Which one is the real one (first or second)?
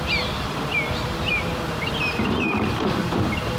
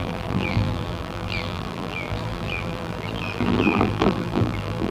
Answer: first